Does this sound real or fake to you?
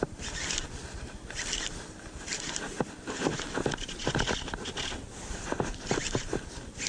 real